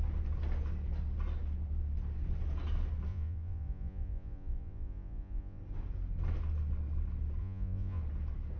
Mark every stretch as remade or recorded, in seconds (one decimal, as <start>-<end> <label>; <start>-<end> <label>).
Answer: 0.0-3.1 recorded; 3.1-5.6 remade; 5.6-7.4 recorded; 7.4-8.0 remade; 8.0-8.6 recorded